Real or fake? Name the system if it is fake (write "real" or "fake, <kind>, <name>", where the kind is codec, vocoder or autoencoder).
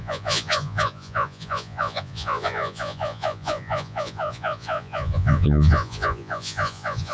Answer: fake, vocoder, Vocos